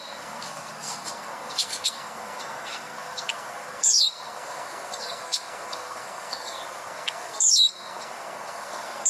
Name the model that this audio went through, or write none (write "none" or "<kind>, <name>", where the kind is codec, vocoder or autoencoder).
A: codec, SNAC